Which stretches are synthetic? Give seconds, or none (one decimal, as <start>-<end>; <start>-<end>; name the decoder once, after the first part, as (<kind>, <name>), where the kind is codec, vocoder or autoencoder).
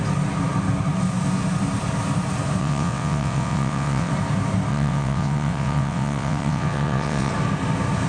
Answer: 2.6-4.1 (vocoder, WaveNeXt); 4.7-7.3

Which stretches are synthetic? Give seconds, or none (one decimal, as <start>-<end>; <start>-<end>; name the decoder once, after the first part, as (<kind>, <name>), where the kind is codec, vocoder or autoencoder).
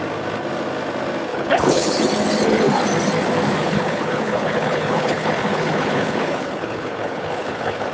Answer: 1.3-2.0 (codec, HILCodec); 3.6-7.9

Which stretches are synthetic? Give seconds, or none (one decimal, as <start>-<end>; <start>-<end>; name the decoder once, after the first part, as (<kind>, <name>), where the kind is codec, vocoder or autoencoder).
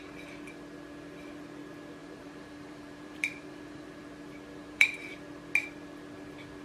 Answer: 2.0-4.0 (vocoder, BigVGAN v2); 4.6-5.1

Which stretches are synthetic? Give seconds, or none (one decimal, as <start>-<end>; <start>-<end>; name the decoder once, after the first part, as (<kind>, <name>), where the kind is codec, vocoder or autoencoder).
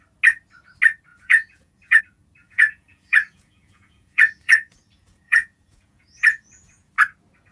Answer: 1.1-2.0 (vocoder, Vocos); 2.4-6.9